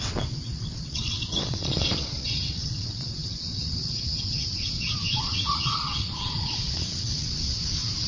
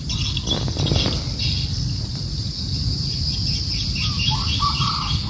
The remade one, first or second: first